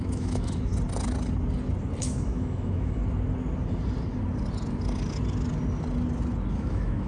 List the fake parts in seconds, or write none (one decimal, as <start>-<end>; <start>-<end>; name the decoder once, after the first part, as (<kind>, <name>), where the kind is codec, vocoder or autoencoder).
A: 0.0-0.7 (autoencoder, DAC-VAE); 2.0-3.0; 6.5-7.1